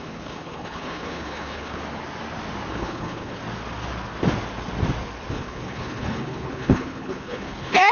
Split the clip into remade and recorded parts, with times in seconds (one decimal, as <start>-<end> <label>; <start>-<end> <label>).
0.0-1.8 remade; 1.8-2.7 recorded; 2.7-3.4 remade; 3.4-5.3 recorded; 5.3-7.9 remade